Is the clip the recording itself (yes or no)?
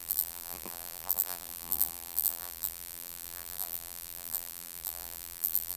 no